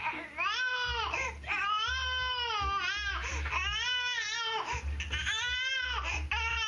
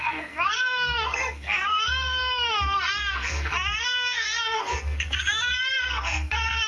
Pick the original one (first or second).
first